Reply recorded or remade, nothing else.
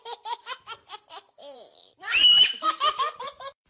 remade